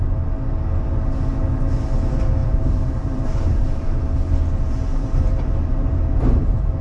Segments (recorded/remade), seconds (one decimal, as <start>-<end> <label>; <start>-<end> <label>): 0.0-2.4 recorded; 2.4-4.3 remade; 4.3-4.9 recorded; 4.9-6.8 remade